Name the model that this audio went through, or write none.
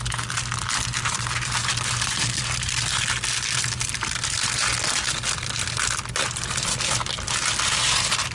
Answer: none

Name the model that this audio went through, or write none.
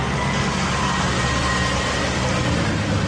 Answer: none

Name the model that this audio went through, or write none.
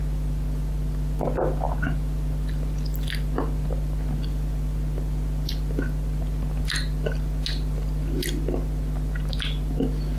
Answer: none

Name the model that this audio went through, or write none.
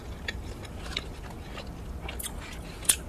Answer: none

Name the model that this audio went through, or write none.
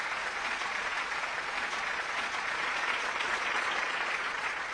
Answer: vocoder, Vocos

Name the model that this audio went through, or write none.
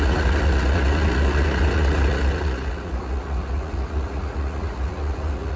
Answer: vocoder, Vocos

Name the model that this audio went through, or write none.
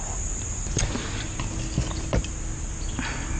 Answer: none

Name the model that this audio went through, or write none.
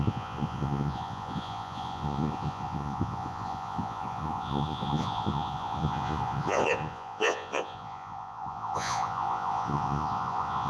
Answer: vocoder, Vocos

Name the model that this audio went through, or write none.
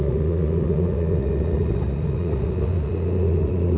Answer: vocoder, Vocos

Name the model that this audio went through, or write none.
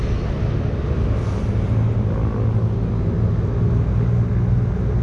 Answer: none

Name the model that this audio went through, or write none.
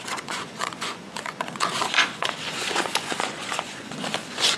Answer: vocoder, Vocos